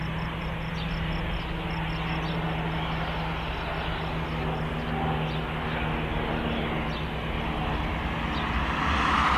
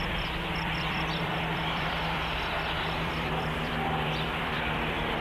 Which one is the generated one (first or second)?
second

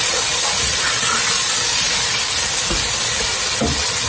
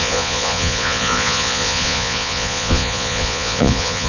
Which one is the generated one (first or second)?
second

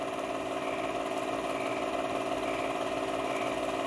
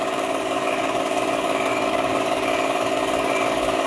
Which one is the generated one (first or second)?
second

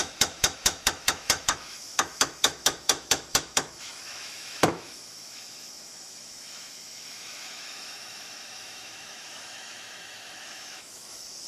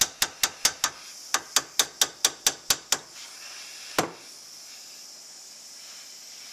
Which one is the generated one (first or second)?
first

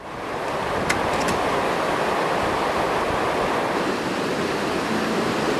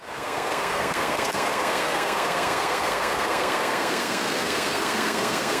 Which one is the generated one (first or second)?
second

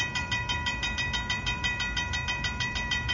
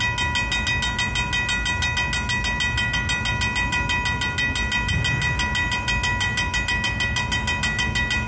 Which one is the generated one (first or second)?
first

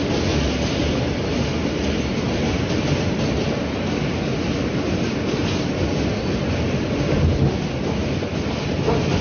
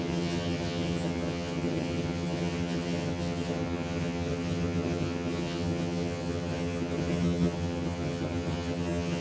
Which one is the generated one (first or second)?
second